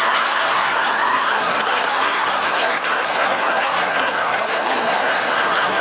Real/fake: fake